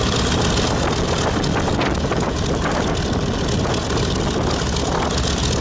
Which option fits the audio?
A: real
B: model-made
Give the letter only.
A